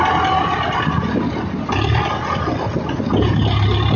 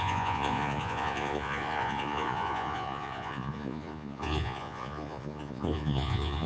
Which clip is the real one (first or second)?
first